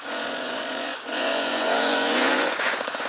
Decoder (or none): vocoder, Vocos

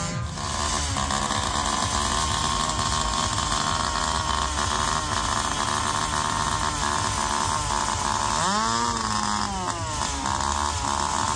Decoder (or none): none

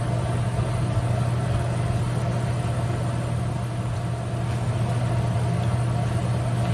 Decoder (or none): none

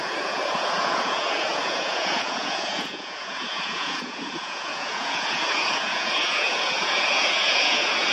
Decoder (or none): vocoder, Vocos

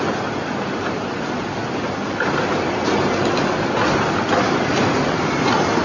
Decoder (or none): none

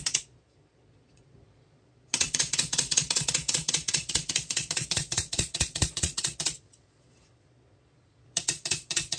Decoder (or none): vocoder, Vocos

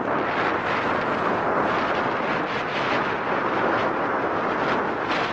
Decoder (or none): none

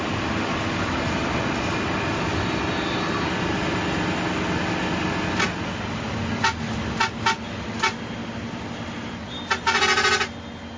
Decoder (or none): none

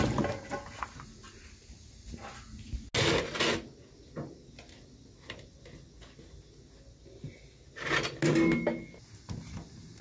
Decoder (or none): none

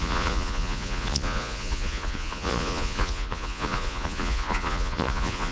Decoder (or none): vocoder, Vocos